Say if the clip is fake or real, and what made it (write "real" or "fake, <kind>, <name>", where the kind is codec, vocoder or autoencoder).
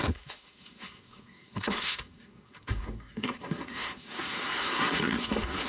fake, codec, SNAC